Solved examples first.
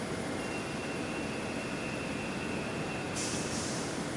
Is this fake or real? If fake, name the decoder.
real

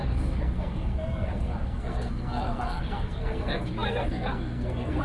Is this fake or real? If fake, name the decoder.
fake, codec, SNAC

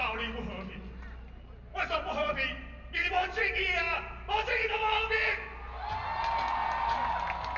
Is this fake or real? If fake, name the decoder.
real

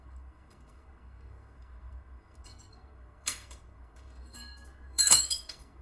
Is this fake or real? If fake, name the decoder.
fake, codec, SNAC